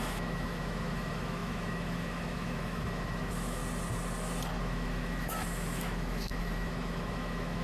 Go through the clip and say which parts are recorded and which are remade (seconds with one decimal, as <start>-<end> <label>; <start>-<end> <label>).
0.0-3.6 remade; 3.6-4.6 recorded; 4.6-7.6 remade